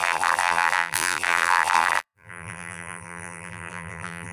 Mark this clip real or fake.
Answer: fake